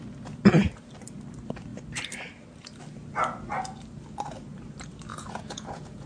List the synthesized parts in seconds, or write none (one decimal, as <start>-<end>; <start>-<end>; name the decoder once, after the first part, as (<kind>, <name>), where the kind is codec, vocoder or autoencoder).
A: 5.1-6.1 (vocoder, Vocos)